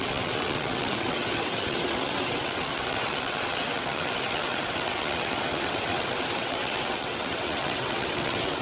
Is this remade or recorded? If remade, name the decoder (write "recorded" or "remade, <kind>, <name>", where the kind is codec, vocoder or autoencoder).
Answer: remade, vocoder, WaveNeXt